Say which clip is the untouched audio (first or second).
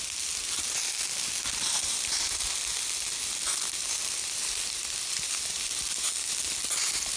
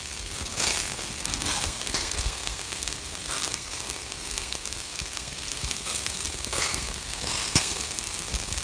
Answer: first